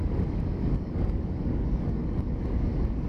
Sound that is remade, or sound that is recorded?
remade